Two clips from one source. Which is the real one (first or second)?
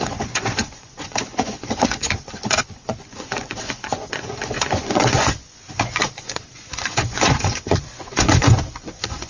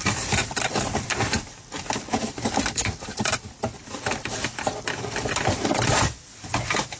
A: second